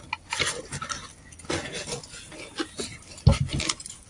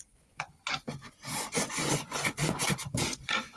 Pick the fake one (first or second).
second